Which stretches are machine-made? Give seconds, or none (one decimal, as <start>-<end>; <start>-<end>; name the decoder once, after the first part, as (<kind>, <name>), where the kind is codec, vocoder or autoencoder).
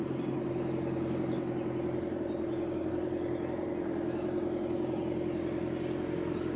none